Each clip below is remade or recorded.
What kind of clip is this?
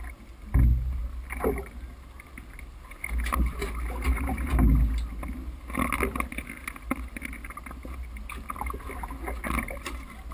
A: recorded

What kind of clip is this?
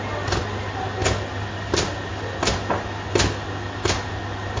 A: recorded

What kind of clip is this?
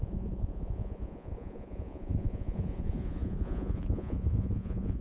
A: remade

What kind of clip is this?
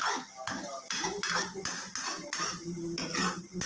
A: recorded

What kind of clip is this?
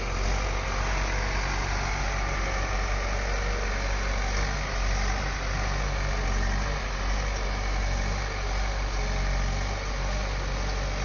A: recorded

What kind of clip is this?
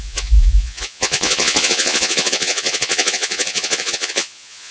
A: remade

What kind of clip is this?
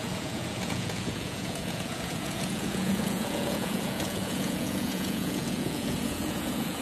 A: remade